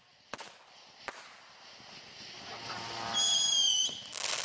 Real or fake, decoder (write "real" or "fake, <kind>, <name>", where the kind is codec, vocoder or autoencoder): real